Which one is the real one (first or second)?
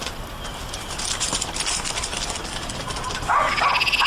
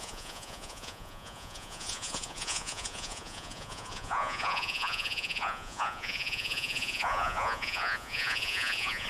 first